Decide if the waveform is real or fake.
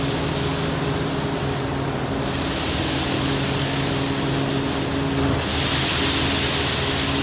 real